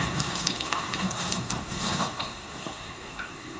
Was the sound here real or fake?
fake